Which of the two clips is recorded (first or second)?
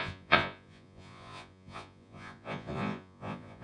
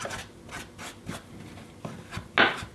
second